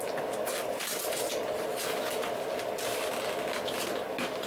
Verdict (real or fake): real